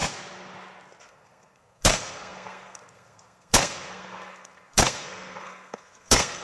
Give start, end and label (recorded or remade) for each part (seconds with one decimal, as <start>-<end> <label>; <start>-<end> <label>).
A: 0.0-1.0 recorded; 1.0-6.4 remade